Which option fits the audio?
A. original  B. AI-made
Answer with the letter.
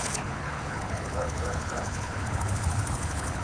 B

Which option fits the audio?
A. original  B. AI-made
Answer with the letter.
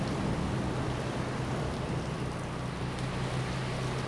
A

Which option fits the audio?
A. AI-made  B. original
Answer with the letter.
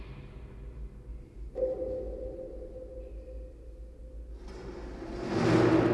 B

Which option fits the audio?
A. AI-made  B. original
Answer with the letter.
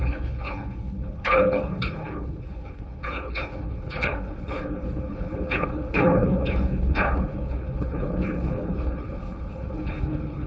A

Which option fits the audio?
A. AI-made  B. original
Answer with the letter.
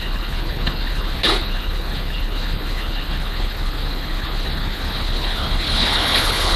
A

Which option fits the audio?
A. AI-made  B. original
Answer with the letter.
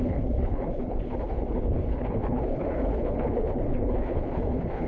A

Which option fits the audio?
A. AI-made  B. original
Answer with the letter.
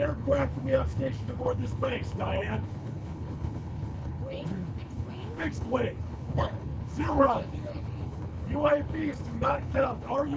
A